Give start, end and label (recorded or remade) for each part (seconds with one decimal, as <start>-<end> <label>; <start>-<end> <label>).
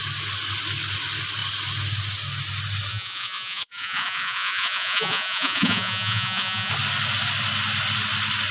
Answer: 0.0-2.9 recorded; 2.9-6.7 remade; 6.7-8.5 recorded